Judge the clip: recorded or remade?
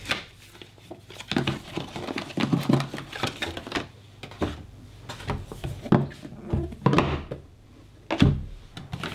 recorded